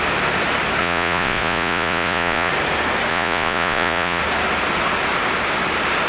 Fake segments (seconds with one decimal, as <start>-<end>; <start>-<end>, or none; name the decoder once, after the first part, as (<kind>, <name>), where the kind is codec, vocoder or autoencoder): 0.8-2.5 (vocoder, Vocos); 3.1-4.2